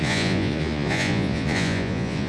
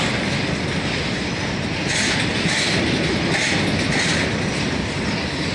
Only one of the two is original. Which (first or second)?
second